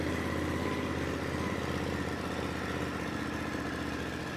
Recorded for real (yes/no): yes